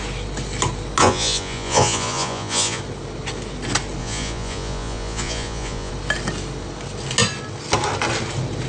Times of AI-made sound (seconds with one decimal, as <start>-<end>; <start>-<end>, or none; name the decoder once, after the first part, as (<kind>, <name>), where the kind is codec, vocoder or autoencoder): 1.0-2.8 (vocoder, Vocos); 4.0-5.9